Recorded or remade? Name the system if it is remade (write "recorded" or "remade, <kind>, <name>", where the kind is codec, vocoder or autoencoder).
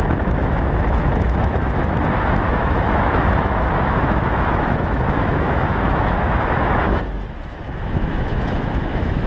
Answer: remade, autoencoder, DAC-VAE